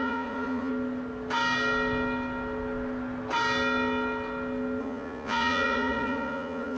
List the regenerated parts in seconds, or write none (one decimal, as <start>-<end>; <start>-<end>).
0.0-0.7; 4.8-6.8